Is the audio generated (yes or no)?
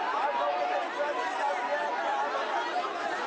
no